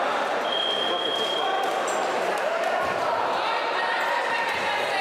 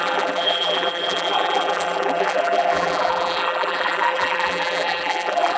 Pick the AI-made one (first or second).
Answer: second